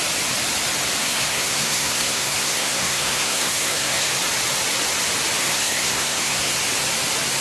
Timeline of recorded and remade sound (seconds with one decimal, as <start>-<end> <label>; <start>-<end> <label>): 0.0-1.0 recorded; 1.0-4.1 remade; 4.1-5.4 recorded; 5.4-6.5 remade; 6.5-7.4 recorded